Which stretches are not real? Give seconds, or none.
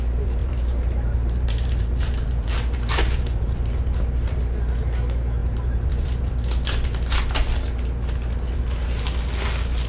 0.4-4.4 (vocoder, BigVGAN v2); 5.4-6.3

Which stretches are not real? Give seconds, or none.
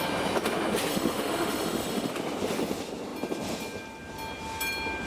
0.9-2.1 (autoencoder, DAC-VAE)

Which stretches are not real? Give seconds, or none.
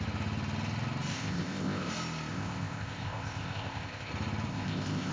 1.1-1.9 (codec, ZipCodec); 2.3-4.1; 4.5-5.1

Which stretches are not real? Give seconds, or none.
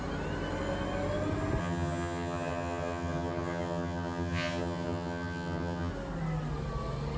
1.6-5.9 (vocoder, HiFi-GAN)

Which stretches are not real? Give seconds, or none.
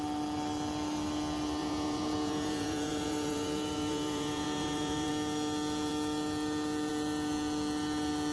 1.6-5.1 (vocoder, Vocos)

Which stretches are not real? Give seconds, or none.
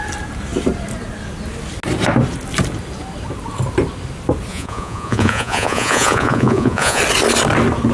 4.5-7.0 (vocoder, Vocos)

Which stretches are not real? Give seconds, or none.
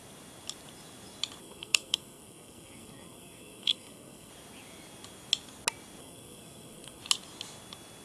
1.4-4.3 (codec, SNAC); 6.0-7.0